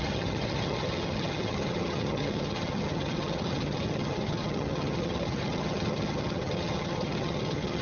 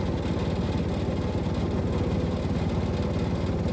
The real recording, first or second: second